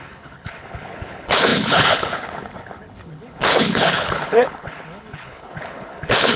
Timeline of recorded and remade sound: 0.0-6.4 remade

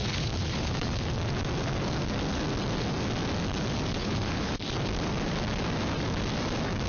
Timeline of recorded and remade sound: 0.0-1.1 remade; 1.1-4.0 recorded; 4.0-4.5 remade; 4.5-6.9 recorded

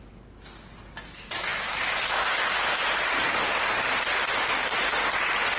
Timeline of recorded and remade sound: 0.0-5.6 recorded

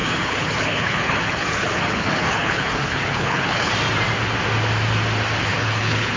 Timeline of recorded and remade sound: 0.0-3.7 remade; 3.7-5.5 recorded; 5.5-6.2 remade

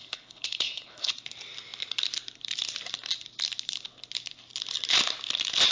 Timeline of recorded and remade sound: 0.0-1.1 remade; 1.1-5.7 recorded

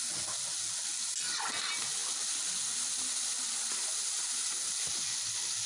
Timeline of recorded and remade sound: 0.0-5.7 recorded

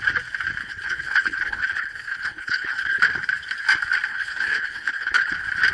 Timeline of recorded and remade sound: 0.0-0.6 recorded; 0.6-3.0 remade; 3.0-4.1 recorded; 4.1-5.3 remade; 5.3-5.7 recorded

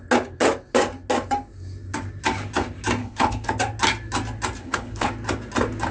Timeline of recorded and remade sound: 0.0-3.0 recorded; 3.0-3.5 remade; 3.5-4.6 recorded; 4.6-5.1 remade; 5.1-5.9 recorded